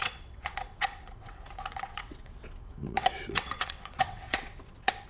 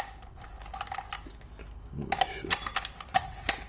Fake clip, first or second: first